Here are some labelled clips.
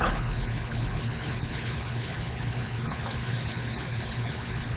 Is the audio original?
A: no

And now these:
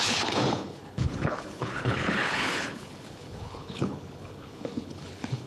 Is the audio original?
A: no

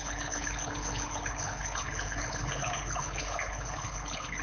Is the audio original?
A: no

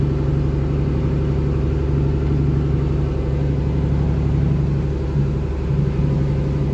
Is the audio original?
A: yes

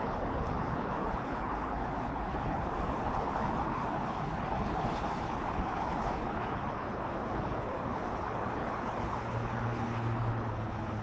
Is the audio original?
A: no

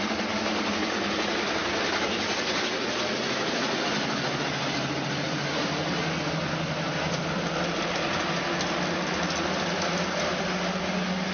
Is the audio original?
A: yes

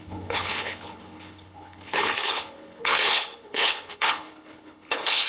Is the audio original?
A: no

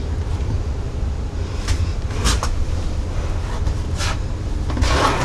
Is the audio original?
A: yes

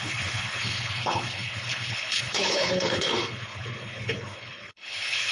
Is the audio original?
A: no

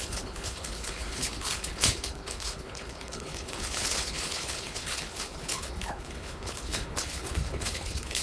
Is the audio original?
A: no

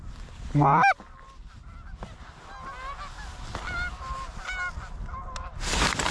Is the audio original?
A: yes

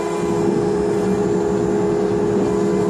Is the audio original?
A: yes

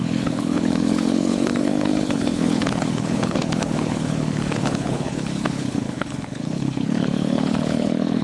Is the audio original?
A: no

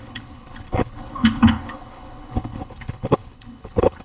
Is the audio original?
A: no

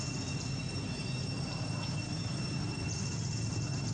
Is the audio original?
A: yes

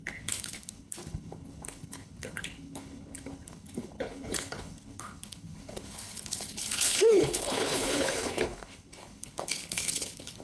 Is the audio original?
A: no